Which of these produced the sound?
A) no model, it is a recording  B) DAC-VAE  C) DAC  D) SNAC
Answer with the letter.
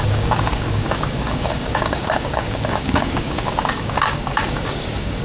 C